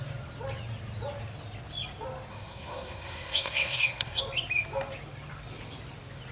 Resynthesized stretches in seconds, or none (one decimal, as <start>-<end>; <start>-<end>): 2.3-4.2